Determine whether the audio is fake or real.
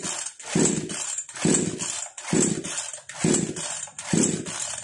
real